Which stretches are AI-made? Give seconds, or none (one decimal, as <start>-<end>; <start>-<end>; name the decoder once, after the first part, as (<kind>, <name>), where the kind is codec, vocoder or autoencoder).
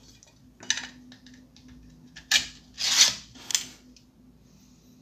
none